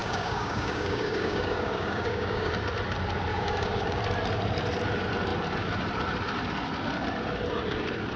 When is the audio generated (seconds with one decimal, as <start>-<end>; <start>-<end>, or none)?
0.0-2.5; 3.3-4.0